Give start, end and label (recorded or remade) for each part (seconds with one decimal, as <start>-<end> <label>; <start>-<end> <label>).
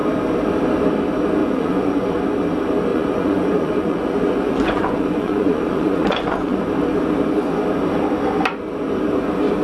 0.0-1.4 recorded; 1.4-2.2 remade; 2.2-2.9 recorded; 2.9-6.6 remade; 6.6-9.6 recorded